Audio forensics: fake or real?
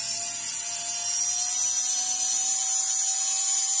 real